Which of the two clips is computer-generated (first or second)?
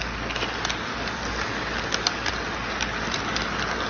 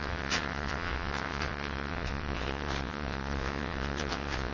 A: second